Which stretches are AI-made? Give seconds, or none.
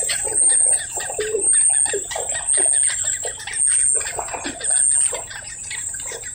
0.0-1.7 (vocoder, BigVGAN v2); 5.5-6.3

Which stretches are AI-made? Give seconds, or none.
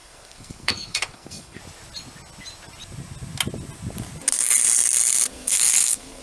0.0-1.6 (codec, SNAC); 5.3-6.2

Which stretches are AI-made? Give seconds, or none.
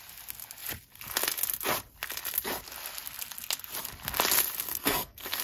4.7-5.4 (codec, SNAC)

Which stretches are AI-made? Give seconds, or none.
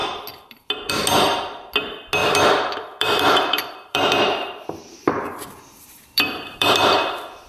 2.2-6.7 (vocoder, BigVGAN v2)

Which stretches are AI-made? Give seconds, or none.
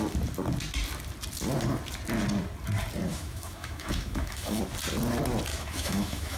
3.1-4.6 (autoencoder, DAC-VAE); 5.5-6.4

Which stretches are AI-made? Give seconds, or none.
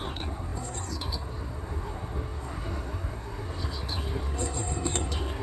0.0-5.4 (codec, SNAC)